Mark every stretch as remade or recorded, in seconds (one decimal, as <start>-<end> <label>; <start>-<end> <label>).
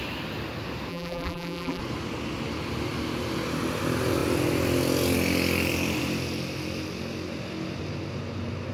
0.0-0.9 recorded; 0.9-1.8 remade; 1.8-8.7 recorded